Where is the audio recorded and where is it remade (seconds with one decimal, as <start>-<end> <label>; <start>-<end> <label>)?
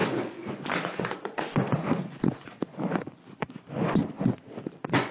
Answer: 0.0-5.1 remade